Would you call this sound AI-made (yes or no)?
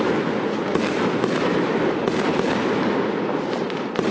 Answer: no